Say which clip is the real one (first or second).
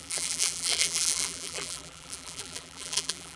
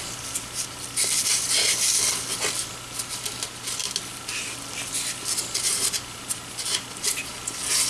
second